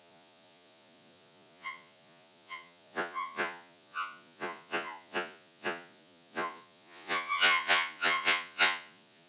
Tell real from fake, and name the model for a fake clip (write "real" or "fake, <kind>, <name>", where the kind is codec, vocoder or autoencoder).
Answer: fake, vocoder, Vocos